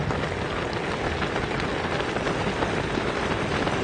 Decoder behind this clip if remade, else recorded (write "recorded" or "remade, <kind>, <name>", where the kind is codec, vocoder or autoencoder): recorded